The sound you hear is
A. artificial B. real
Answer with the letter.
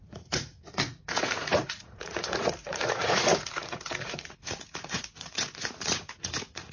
A